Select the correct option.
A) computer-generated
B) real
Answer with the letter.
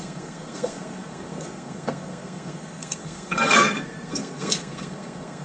A